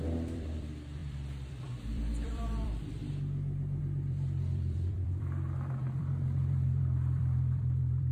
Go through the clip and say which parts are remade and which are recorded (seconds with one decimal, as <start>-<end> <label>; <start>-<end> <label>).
0.0-3.0 remade; 3.0-3.8 recorded; 3.8-8.1 remade